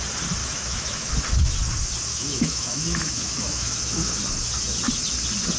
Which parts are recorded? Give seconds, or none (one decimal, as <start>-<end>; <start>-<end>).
0.0-0.4; 1.1-2.1; 4.2-5.6